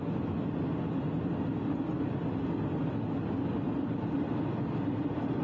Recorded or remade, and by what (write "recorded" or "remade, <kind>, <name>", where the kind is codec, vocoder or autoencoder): recorded